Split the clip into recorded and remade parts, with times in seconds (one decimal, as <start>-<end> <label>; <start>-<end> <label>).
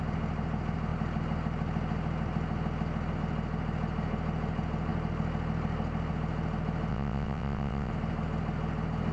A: 0.0-6.9 recorded; 6.9-7.9 remade; 7.9-9.1 recorded